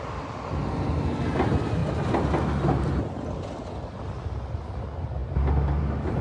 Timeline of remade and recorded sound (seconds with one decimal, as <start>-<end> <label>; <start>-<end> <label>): 0.0-6.2 recorded